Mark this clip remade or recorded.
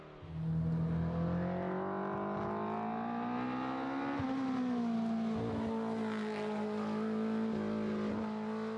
recorded